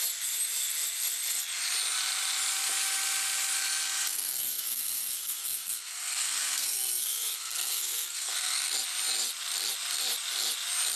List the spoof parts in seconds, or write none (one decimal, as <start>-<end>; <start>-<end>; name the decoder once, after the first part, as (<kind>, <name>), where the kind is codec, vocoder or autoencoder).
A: 4.1-8.7 (codec, SNAC)